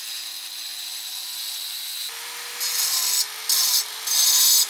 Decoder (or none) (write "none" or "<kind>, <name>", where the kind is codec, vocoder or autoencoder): none